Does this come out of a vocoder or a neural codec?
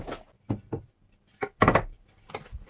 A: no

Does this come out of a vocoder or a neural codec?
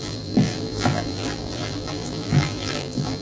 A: yes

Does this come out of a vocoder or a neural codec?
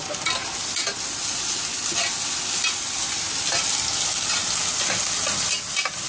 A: no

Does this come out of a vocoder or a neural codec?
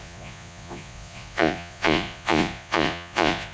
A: yes